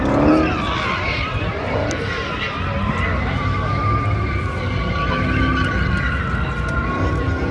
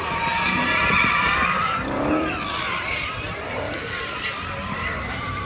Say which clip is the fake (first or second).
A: second